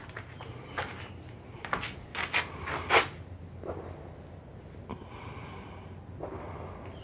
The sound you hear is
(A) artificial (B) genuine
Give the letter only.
B